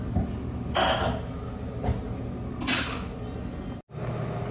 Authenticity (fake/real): real